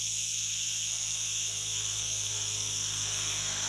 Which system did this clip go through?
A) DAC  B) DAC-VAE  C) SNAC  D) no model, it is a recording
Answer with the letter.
C